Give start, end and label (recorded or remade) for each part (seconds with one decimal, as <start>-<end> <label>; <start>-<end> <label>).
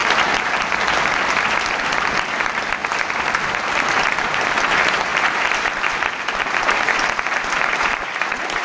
0.0-1.3 recorded; 1.3-8.6 remade